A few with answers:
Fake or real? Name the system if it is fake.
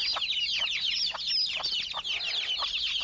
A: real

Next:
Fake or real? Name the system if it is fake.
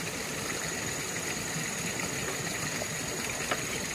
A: real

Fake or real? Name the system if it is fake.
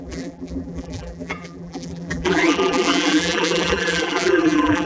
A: fake, vocoder, BigVGAN v2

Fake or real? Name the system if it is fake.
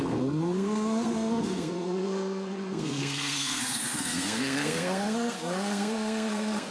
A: fake, codec, SNAC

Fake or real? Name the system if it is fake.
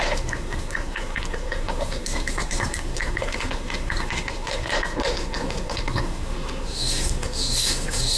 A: fake, codec, SNAC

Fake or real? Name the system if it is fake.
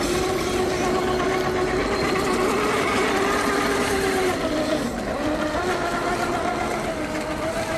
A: real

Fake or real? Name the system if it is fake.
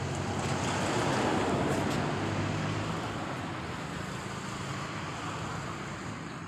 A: real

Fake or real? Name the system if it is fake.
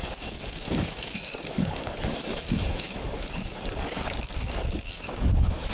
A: fake, codec, DAC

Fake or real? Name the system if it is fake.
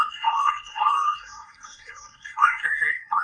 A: fake, codec, SNAC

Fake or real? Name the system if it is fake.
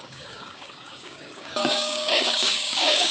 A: fake, codec, DAC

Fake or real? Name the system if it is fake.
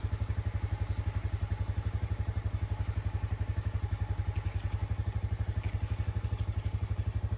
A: real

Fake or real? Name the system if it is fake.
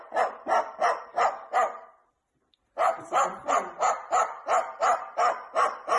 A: fake, vocoder, BigVGAN v2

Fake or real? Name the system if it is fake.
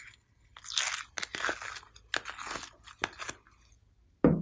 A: real